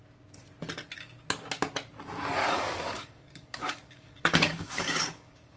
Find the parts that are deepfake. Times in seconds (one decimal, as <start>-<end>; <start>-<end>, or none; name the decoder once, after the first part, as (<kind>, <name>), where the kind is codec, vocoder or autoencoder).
2.4-5.6 (codec, DAC)